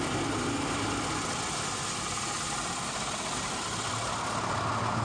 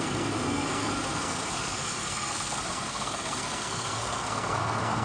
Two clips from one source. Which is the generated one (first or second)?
second